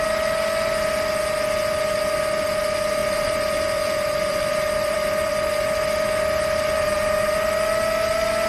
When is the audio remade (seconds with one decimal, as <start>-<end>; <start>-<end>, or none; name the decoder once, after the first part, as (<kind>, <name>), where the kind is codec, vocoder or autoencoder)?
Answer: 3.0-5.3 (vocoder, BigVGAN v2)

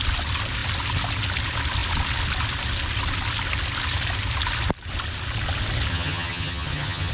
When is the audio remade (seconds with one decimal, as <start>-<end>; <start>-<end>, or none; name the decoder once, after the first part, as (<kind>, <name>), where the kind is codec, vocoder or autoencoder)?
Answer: 5.9-7.1 (vocoder, HiFi-GAN)

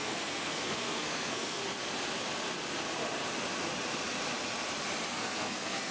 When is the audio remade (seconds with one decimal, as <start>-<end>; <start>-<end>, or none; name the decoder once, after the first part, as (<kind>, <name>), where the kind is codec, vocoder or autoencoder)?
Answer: 0.0-1.6 (codec, SNAC); 5.1-5.9

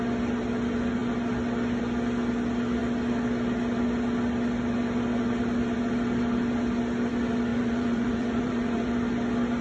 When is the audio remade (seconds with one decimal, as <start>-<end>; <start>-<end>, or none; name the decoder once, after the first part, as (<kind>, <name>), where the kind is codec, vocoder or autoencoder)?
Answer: 7.5-8.9 (vocoder, Vocos)

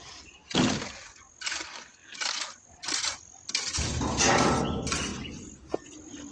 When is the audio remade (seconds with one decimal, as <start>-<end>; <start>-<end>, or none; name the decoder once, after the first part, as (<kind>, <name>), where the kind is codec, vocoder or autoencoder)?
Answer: none